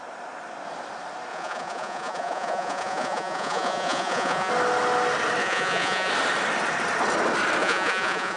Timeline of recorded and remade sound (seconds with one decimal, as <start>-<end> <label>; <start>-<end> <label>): 0.0-1.3 recorded; 1.3-4.5 remade; 4.5-5.4 recorded; 5.4-6.1 remade; 6.1-7.6 recorded; 7.6-8.4 remade